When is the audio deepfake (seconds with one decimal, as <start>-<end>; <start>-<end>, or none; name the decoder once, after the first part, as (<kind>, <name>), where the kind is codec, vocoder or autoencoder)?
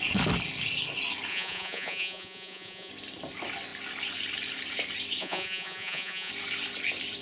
1.3-2.9 (vocoder, Vocos); 5.2-6.3